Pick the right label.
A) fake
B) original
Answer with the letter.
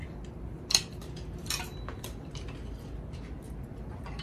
B